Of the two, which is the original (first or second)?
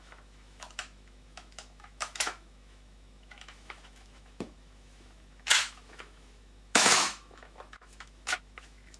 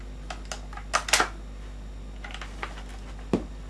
second